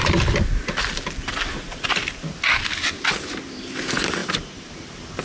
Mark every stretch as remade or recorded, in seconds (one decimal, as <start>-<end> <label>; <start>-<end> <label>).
0.0-4.2 recorded; 4.2-5.2 remade